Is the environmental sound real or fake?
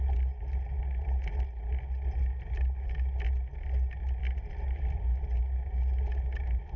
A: real